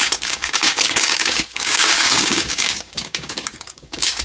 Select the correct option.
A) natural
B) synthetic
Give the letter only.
B